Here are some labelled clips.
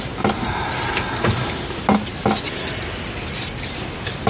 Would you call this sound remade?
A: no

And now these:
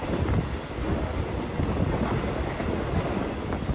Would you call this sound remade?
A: no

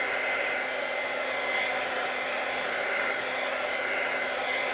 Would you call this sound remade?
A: no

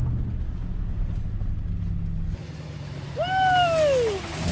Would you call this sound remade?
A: no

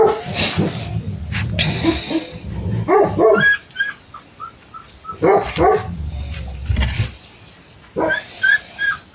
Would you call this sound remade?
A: no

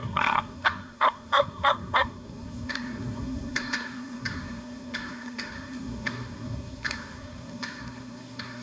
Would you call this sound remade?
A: yes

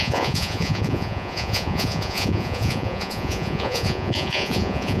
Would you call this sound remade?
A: yes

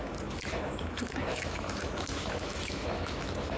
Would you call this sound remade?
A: yes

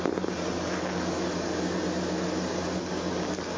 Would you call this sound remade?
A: no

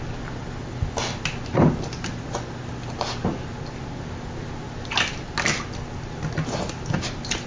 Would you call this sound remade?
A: no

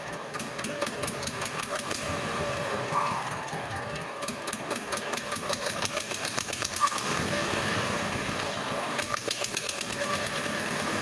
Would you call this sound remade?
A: yes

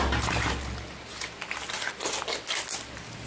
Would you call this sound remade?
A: no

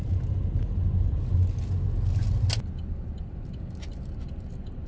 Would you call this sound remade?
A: no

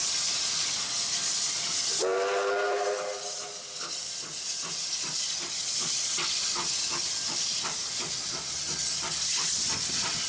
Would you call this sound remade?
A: no